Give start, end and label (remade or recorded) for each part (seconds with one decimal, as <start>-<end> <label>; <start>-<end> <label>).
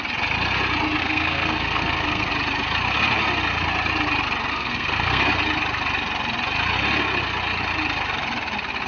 0.0-1.0 recorded; 1.0-2.3 remade; 2.3-4.5 recorded; 4.5-5.2 remade; 5.2-8.9 recorded